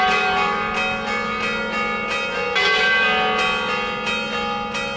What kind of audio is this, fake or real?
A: real